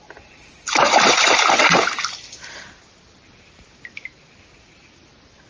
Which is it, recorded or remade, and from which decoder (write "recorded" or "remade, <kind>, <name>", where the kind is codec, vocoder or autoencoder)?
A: recorded